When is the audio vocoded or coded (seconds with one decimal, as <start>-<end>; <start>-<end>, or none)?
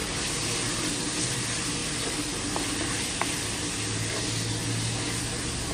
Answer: none